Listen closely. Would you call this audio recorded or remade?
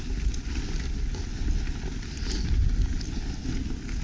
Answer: recorded